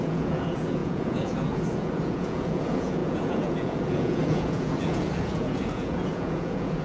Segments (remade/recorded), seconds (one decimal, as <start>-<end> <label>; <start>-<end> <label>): 0.0-6.8 remade